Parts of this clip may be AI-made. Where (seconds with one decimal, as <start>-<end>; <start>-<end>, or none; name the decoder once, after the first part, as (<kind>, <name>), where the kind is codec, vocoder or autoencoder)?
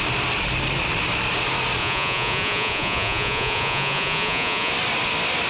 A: 1.8-4.7 (vocoder, Vocos)